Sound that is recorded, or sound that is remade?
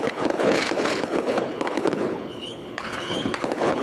remade